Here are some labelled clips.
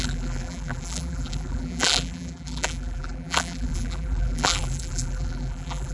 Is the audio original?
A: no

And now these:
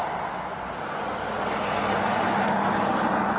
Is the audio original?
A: yes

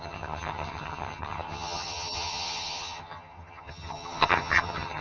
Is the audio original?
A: no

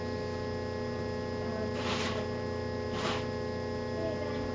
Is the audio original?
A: yes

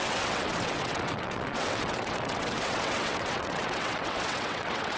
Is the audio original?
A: no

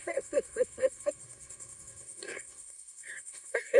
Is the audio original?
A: no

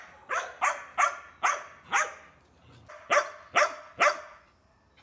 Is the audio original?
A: yes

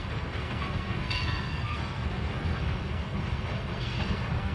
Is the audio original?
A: no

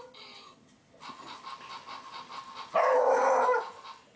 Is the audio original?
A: yes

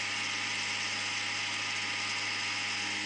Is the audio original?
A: yes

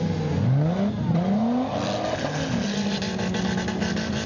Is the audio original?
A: yes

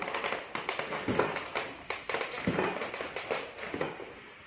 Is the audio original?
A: yes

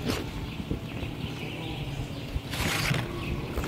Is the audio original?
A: yes